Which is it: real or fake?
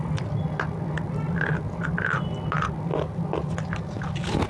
real